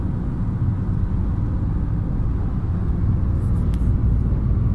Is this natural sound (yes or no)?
yes